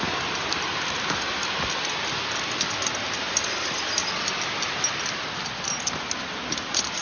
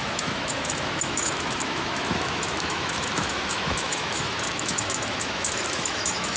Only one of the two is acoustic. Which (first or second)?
first